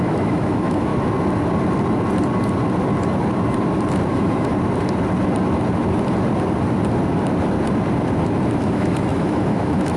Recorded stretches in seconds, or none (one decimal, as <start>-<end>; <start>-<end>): 0.9-4.1; 4.5-8.6

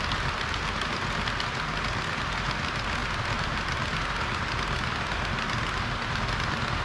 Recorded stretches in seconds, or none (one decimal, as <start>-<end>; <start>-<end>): 0.0-6.8